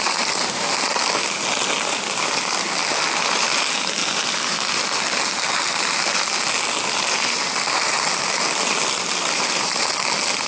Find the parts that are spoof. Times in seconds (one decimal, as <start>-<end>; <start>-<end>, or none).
none